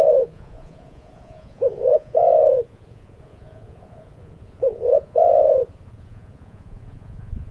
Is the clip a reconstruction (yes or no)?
yes